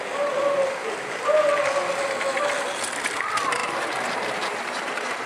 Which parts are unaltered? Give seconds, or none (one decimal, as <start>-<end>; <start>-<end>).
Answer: 0.0-0.8; 1.4-3.6